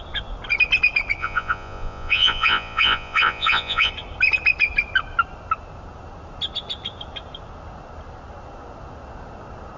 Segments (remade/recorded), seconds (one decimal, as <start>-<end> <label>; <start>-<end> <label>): 0.0-1.2 recorded; 1.2-3.9 remade; 3.9-9.8 recorded